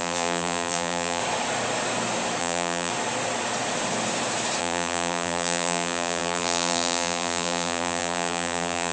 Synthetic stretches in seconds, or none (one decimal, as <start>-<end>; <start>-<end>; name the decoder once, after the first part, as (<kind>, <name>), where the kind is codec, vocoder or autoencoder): 0.0-1.2 (vocoder, BigVGAN v2); 2.4-2.9; 4.6-8.9